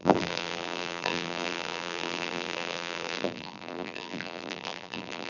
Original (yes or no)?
no